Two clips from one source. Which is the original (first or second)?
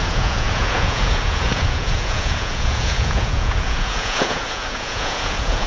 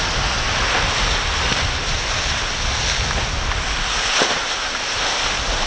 second